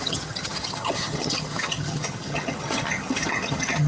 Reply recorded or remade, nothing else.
remade